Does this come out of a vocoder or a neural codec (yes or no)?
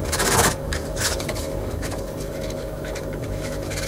yes